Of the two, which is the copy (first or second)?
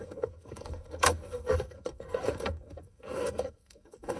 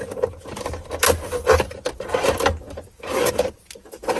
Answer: first